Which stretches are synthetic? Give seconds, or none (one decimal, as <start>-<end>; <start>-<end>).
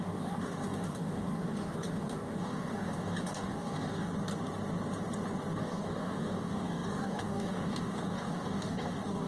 0.0-4.1; 5.5-9.3